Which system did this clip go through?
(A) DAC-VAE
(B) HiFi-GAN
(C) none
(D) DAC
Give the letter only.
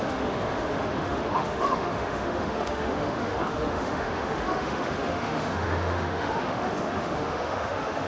A